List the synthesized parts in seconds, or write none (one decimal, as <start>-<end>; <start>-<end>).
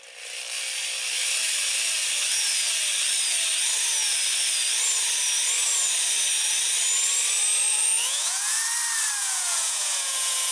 7.7-8.6; 9.2-10.5